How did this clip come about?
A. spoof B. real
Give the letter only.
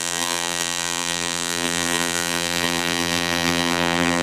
A